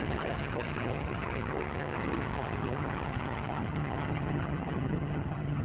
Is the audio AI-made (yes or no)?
yes